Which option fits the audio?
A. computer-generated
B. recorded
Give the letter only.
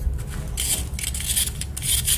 B